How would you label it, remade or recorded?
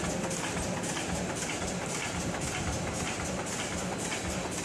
recorded